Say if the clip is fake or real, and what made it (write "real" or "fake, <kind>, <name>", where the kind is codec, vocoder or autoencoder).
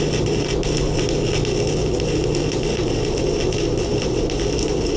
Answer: real